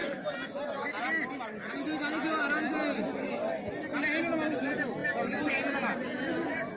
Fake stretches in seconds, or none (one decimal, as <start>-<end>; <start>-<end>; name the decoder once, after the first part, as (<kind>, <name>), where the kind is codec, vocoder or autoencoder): none